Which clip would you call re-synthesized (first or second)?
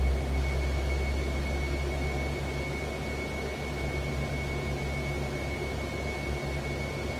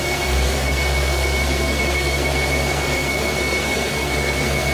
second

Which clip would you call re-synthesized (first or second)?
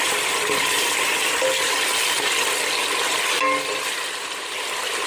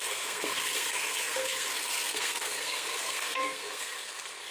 second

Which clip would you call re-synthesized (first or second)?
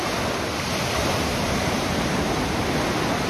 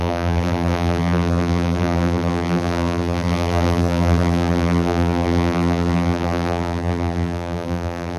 second